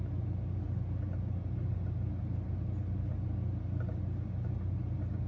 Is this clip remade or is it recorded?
recorded